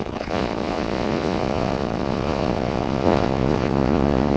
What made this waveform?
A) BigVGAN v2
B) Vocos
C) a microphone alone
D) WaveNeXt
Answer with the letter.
B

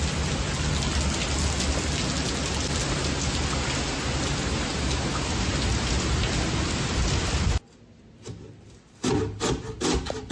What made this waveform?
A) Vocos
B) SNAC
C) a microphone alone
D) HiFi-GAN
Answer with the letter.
C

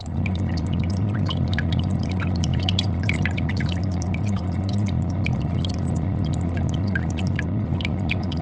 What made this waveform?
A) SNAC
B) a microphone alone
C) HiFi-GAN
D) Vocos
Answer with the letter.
D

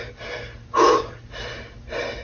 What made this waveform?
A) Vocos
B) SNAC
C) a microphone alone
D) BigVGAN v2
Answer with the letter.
C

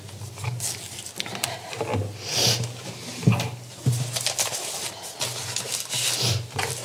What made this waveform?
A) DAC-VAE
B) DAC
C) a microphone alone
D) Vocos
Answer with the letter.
C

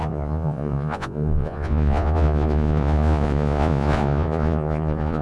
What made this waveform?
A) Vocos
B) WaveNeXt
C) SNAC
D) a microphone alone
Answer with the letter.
A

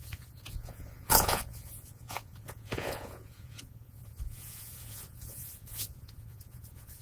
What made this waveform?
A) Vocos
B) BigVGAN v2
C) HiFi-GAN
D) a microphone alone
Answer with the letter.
A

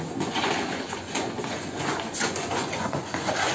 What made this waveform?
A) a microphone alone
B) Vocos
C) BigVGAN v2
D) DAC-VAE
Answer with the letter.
B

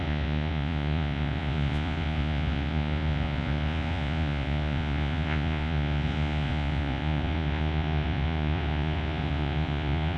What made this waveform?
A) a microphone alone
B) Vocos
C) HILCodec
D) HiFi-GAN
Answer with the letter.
B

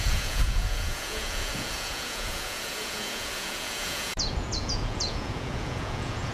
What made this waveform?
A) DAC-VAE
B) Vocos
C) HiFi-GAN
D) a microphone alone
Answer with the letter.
B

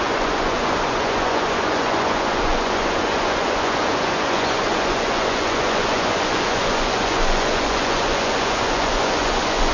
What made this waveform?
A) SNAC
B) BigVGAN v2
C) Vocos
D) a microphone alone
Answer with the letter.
C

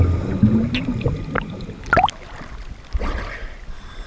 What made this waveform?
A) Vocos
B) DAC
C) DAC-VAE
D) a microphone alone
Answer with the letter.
D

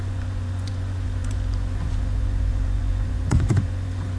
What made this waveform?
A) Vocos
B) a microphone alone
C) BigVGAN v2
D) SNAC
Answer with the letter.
A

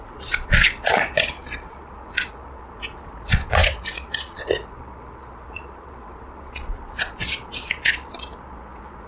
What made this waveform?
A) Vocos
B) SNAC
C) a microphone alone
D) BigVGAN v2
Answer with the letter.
A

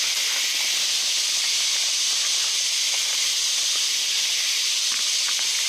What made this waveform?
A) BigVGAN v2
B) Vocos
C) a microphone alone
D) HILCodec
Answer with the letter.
C